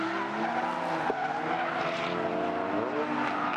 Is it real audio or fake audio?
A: real